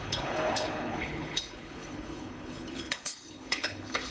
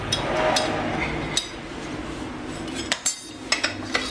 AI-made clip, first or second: first